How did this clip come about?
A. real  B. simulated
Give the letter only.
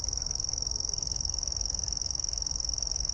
B